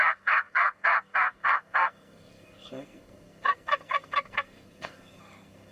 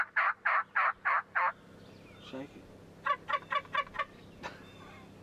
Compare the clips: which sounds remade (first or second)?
first